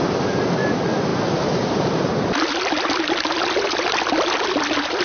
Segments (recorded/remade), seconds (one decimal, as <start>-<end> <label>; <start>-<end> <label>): 0.0-5.0 recorded